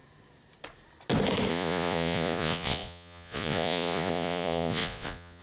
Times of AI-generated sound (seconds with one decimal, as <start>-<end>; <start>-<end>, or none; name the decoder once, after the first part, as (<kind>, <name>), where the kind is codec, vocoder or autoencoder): 1.5-5.4 (vocoder, Vocos)